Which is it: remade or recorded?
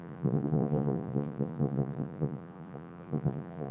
remade